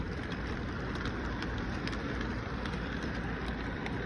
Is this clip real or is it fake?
fake